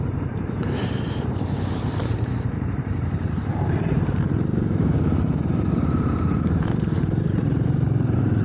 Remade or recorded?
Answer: remade